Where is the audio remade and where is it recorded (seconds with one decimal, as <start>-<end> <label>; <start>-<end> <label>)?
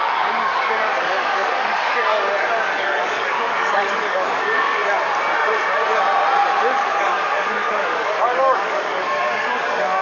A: 0.0-2.1 remade; 2.1-2.8 recorded; 2.8-4.8 remade; 4.8-7.0 recorded; 7.0-10.0 remade